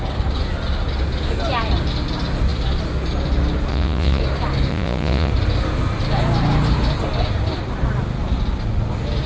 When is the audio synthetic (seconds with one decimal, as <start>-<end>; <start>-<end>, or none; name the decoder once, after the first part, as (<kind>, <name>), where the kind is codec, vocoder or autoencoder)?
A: 3.7-4.2 (vocoder, Vocos); 4.7-5.3